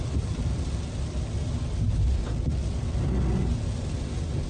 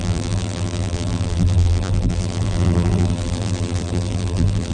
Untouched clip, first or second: first